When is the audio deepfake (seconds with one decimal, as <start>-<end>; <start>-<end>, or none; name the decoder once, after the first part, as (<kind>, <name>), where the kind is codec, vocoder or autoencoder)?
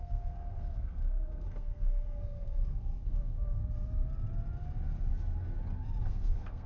0.0-3.6 (codec, SNAC); 6.0-6.7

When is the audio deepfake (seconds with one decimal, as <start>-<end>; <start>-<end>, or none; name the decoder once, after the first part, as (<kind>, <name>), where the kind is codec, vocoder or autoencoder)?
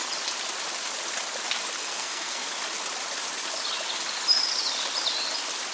1.8-2.5 (codec, SNAC)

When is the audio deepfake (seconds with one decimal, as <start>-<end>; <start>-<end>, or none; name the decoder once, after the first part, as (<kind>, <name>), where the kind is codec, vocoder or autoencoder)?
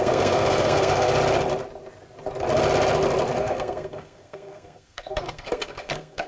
0.0-1.1 (codec, SNAC); 3.4-6.3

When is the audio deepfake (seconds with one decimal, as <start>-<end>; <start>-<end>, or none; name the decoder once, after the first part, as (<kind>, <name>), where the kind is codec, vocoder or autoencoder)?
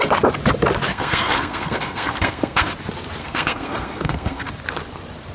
0.9-2.7 (codec, SNAC); 3.2-4.5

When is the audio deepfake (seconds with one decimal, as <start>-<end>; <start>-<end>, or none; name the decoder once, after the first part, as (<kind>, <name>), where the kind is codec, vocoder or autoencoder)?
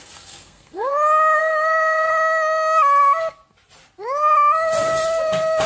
0.0-0.9 (codec, SNAC); 1.4-2.1